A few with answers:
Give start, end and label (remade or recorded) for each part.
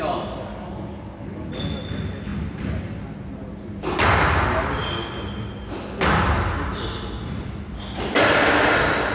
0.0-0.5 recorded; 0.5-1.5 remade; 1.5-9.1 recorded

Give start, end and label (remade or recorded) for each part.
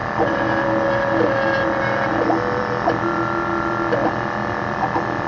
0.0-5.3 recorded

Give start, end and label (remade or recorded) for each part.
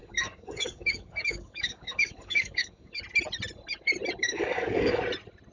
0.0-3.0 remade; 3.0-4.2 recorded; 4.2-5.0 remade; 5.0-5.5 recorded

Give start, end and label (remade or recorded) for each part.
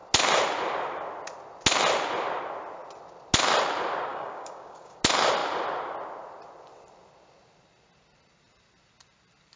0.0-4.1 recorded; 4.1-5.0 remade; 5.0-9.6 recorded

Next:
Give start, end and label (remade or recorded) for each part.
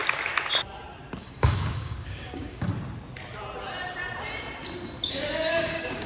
0.0-1.2 recorded; 1.2-2.7 remade; 2.7-5.1 recorded; 5.1-6.1 remade